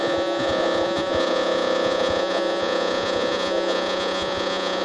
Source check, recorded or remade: remade